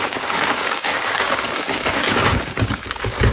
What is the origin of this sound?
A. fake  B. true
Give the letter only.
A